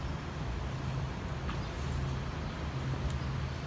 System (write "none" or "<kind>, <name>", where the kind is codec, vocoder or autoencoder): none